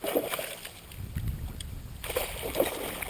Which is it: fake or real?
fake